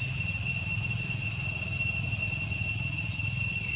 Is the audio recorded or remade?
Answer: recorded